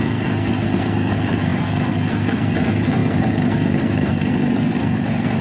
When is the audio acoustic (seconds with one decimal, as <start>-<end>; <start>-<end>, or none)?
none